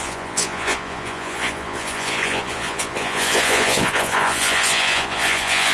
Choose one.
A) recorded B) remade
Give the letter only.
B